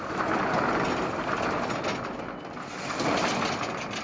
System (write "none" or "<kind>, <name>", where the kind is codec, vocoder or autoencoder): none